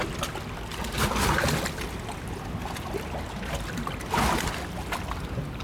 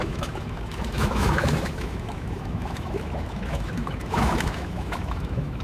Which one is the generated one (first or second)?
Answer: second